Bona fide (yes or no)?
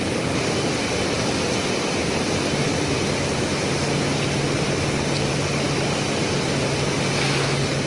yes